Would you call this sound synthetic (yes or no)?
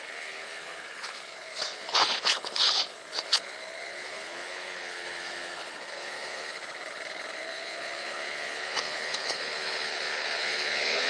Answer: yes